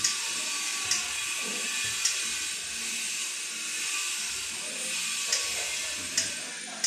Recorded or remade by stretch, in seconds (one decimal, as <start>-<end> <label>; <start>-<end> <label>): 0.0-6.9 recorded